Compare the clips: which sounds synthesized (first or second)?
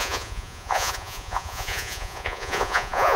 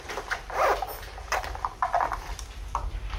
first